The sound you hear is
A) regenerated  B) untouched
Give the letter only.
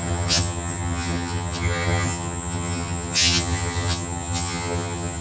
A